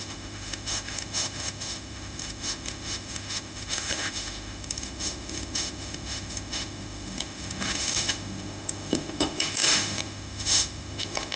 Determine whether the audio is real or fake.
fake